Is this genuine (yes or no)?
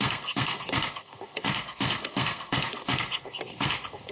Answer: no